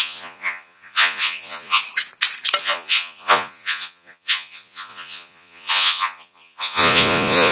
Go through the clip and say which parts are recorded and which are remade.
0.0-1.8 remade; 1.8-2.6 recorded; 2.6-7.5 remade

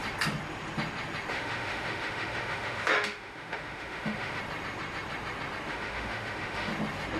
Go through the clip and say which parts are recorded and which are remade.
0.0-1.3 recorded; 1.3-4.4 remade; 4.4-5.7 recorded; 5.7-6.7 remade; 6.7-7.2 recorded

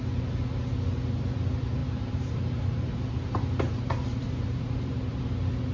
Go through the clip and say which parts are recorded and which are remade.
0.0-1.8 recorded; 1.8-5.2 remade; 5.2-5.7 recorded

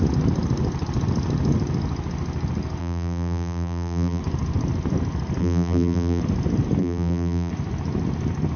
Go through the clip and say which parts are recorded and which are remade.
0.0-2.8 recorded; 2.8-4.2 remade; 4.2-5.4 recorded; 5.4-6.2 remade; 6.2-6.8 recorded; 6.8-7.5 remade; 7.5-8.6 recorded

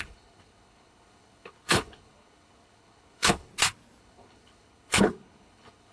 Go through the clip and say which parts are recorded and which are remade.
0.0-3.5 remade; 3.5-4.0 recorded; 4.0-5.9 remade